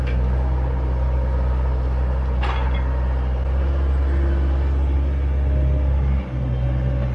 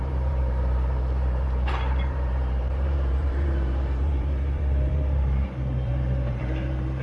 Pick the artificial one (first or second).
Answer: second